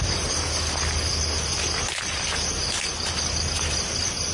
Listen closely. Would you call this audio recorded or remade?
recorded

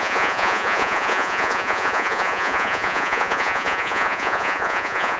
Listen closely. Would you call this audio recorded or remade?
remade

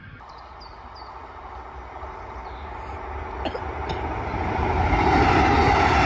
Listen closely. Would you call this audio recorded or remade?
recorded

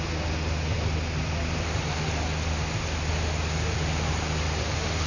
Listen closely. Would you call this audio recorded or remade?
recorded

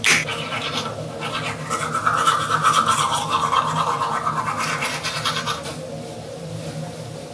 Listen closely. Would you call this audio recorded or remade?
recorded